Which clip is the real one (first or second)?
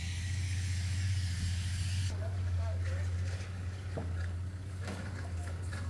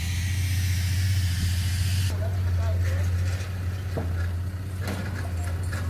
second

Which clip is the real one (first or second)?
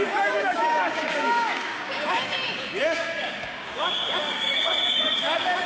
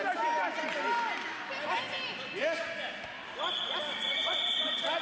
second